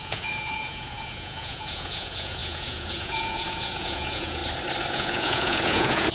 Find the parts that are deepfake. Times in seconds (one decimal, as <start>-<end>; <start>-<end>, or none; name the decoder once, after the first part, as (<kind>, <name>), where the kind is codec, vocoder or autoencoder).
0.0-4.4 (vocoder, Vocos); 4.9-6.1